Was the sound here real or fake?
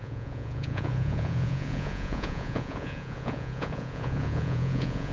fake